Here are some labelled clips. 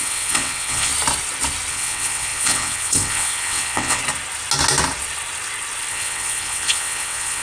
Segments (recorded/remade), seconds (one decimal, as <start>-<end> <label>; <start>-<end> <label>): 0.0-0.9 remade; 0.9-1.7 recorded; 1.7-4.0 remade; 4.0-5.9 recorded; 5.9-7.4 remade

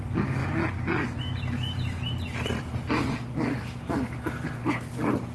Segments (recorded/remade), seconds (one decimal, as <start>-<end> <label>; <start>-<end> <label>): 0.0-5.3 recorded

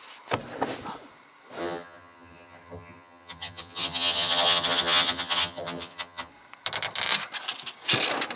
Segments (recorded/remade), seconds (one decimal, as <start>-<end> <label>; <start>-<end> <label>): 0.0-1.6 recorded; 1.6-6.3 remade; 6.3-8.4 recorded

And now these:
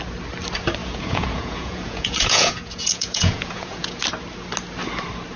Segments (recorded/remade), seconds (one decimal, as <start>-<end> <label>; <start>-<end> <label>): 0.0-0.8 recorded; 0.8-4.0 remade; 4.0-5.4 recorded

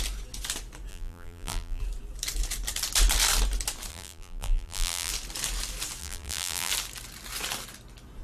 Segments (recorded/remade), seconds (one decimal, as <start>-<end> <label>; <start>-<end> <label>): 0.0-0.9 recorded; 0.9-1.8 remade; 1.8-3.9 recorded; 3.9-5.1 remade; 5.1-6.0 recorded; 6.0-6.7 remade; 6.7-8.2 recorded

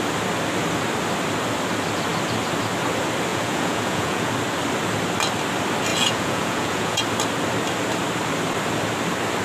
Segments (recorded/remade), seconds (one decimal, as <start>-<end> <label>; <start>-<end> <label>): 0.0-3.3 recorded; 3.3-4.3 remade; 4.3-5.9 recorded; 5.9-7.0 remade; 7.0-9.4 recorded

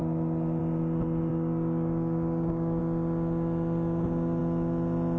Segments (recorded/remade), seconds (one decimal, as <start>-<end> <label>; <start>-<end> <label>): 0.0-1.3 recorded; 1.3-2.8 remade; 2.8-5.2 recorded

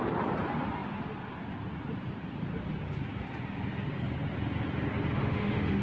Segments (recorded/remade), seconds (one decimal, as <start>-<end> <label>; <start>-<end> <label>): 0.0-5.2 recorded; 5.2-5.8 remade